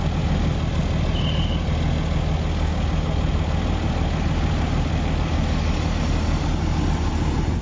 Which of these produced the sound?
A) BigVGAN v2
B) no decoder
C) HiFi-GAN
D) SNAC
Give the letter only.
B